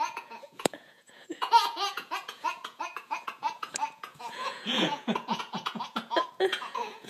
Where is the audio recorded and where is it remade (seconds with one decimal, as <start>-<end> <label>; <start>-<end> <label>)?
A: 0.0-7.1 remade